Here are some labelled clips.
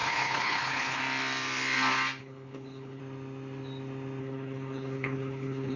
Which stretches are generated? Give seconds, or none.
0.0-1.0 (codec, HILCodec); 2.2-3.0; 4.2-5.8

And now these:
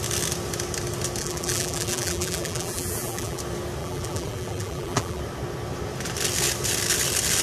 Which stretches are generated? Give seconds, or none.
1.2-3.4 (vocoder, BigVGAN v2); 3.8-5.2

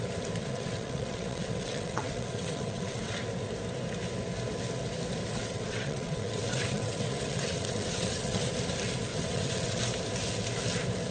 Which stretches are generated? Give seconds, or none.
0.4-3.1 (vocoder, WaveNeXt); 5.3-8.5; 9.1-9.8

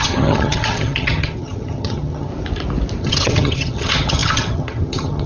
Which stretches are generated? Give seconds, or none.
0.0-2.3 (vocoder, HiFi-GAN); 3.0-5.3

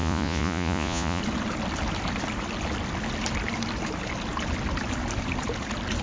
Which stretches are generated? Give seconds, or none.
0.0-1.2 (vocoder, Vocos)

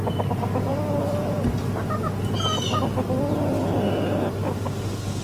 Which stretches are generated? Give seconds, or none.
none

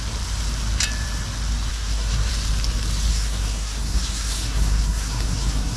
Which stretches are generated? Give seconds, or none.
1.7-2.3 (codec, SNAC); 3.1-5.8

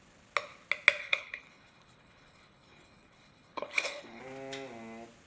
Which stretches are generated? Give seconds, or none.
1.0-4.2 (codec, HILCodec)